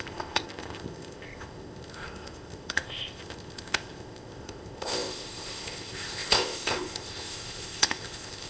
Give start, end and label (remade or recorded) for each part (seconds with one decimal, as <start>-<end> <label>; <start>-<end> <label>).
0.0-8.5 remade